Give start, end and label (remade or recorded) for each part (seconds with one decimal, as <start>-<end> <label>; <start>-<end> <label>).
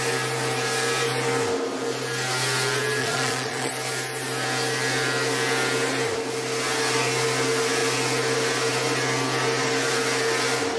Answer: 0.0-3.0 recorded; 3.0-3.7 remade; 3.7-10.8 recorded